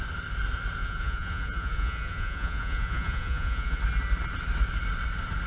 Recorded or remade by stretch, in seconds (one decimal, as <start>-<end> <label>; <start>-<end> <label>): 0.0-0.8 recorded; 0.8-3.8 remade; 3.8-5.5 recorded